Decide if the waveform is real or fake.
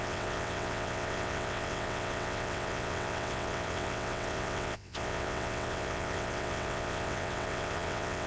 fake